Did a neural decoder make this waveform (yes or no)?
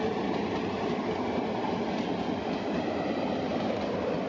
no